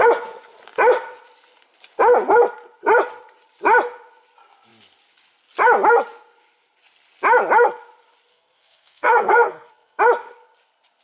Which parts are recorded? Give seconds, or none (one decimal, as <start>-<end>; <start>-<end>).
0.0-8.3; 10.0-11.0